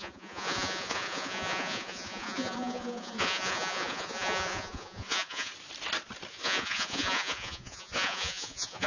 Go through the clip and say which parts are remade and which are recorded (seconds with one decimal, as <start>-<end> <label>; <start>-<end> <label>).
0.0-5.5 remade; 5.5-6.3 recorded; 6.3-8.9 remade

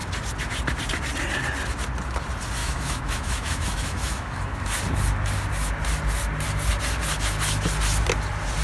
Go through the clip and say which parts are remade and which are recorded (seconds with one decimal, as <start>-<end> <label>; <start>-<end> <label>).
0.0-2.6 recorded; 2.6-4.8 remade; 4.8-8.6 recorded